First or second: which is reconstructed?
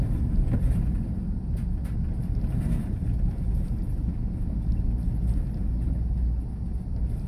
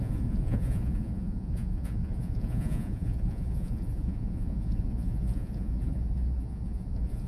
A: second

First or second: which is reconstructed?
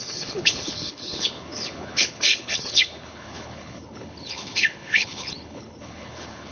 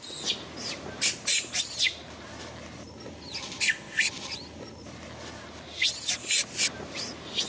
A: first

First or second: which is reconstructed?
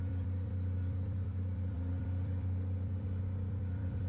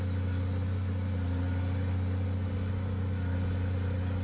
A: first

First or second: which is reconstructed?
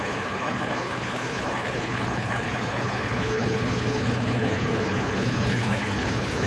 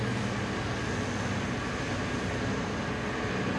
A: first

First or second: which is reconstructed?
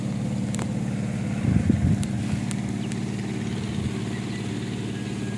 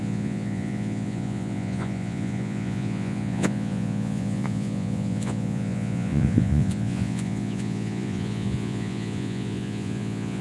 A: second